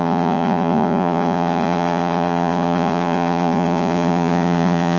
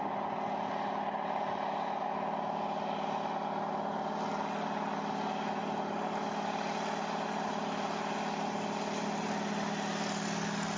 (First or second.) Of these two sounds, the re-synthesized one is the first